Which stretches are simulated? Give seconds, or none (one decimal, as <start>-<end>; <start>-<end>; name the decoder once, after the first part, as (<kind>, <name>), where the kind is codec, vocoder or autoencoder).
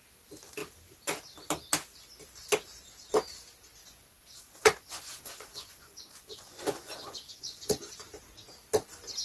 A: 3.8-7.9 (vocoder, Vocos)